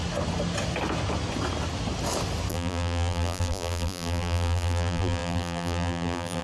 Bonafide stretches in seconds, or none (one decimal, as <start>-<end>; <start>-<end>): 0.0-2.5